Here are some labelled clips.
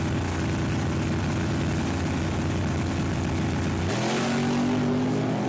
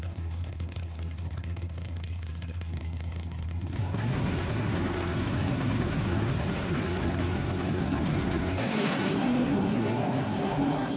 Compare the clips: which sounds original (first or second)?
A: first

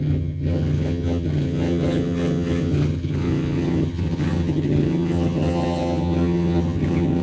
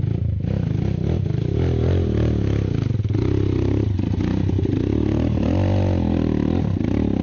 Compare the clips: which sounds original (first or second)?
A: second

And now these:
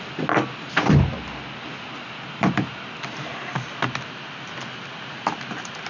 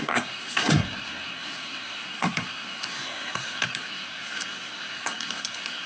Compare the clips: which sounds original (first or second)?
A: first